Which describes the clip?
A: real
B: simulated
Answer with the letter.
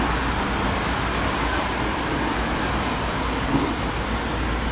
A